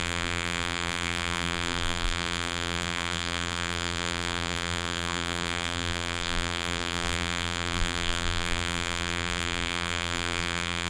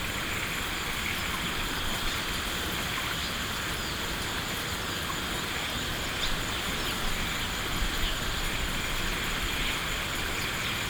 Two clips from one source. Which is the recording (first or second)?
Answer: second